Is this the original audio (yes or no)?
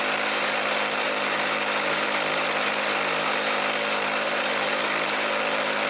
yes